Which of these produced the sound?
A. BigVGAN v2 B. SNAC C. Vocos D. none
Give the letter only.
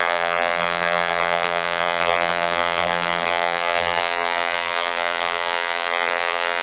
A